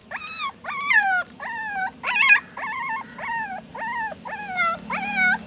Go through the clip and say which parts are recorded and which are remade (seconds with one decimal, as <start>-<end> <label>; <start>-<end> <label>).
0.0-3.7 remade; 3.7-5.5 recorded

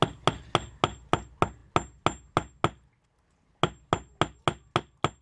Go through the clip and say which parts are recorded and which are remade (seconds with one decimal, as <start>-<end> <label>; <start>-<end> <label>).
0.0-5.2 recorded

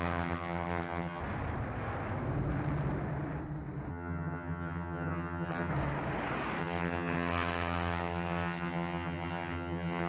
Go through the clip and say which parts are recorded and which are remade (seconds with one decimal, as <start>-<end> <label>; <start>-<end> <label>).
0.0-1.2 remade; 1.2-3.9 recorded; 3.9-5.7 remade; 5.7-6.6 recorded; 6.6-10.1 remade

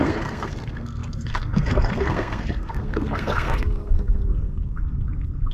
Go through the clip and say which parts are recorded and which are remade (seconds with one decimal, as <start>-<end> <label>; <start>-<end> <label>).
0.0-5.5 remade